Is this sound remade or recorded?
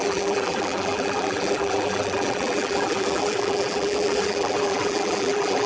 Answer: remade